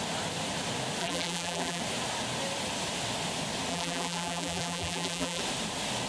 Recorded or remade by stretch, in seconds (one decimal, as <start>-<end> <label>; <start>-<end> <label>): 0.0-1.0 recorded; 1.0-1.8 remade; 1.8-3.7 recorded; 3.7-5.4 remade; 5.4-6.1 recorded